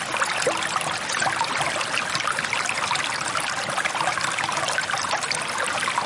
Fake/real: real